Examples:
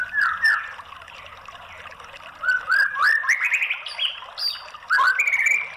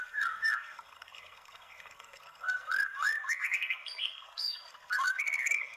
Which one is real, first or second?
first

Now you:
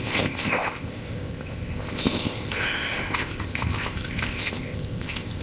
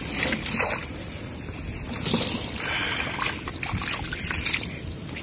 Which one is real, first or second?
second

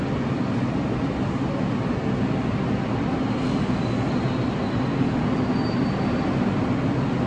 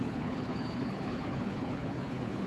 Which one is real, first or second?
first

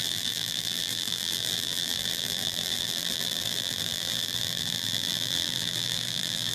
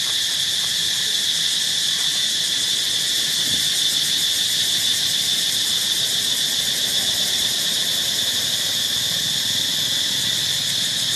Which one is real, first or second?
second